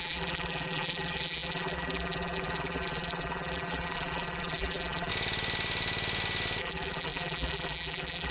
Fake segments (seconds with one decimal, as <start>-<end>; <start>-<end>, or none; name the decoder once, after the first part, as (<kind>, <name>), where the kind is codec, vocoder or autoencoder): 0.0-5.1 (vocoder, BigVGAN v2); 6.6-8.3